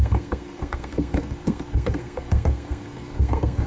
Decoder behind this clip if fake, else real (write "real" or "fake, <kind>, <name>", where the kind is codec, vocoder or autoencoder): fake, codec, SNAC